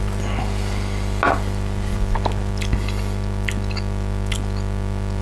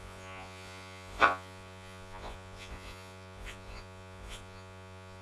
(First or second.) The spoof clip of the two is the second